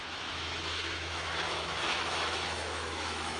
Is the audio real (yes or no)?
no